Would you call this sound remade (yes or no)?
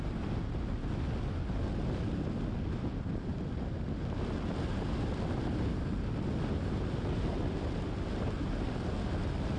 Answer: no